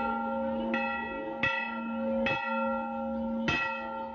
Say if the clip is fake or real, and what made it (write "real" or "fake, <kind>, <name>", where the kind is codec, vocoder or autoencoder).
real